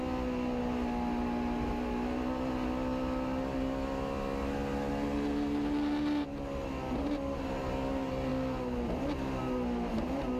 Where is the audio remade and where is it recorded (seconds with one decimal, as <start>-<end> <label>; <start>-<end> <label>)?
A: 0.0-10.4 recorded